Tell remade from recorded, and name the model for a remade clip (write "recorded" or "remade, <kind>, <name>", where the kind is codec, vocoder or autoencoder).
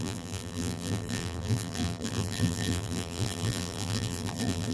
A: remade, vocoder, BigVGAN v2